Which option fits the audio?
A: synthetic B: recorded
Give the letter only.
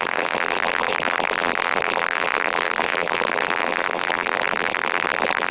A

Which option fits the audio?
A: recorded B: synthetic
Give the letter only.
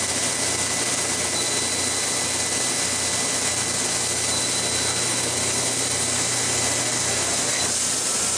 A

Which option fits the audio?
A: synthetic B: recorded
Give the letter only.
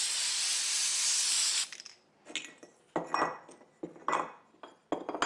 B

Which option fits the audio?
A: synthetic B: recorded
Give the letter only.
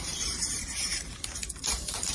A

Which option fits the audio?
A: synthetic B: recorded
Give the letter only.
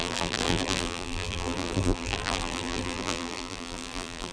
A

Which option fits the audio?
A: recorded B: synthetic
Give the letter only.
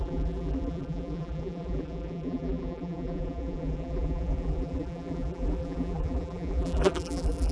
B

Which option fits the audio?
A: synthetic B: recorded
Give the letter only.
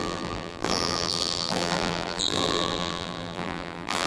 A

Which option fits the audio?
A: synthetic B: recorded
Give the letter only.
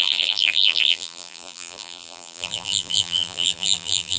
A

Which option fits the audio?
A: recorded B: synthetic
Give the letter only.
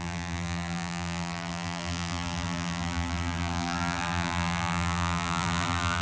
B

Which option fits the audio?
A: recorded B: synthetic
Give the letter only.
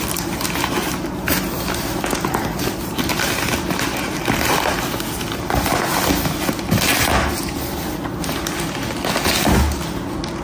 A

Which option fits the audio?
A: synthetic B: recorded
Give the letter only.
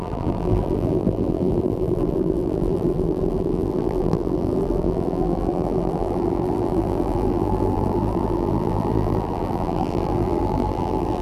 A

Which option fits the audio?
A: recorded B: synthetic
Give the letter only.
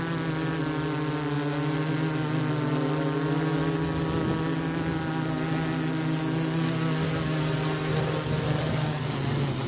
A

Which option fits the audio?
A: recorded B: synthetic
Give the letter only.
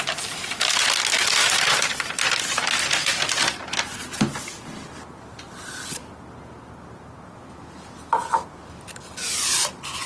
A